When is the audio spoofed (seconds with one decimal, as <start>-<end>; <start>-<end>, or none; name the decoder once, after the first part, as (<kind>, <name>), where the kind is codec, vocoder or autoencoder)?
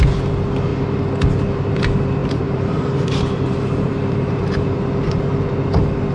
2.2-4.7 (vocoder, BigVGAN v2)